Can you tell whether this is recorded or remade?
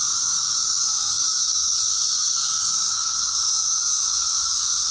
remade